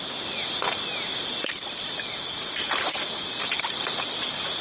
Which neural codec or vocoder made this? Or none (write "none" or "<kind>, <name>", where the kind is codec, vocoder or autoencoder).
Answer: none